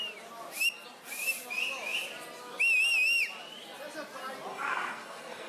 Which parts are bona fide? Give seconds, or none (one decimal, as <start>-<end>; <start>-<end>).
0.0-4.5